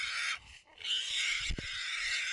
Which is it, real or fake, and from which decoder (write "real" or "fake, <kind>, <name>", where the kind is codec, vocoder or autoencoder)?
real